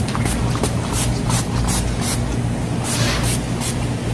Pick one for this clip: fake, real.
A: real